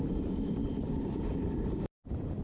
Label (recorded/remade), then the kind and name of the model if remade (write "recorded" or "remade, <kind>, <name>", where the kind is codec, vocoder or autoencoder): remade, vocoder, BigVGAN v2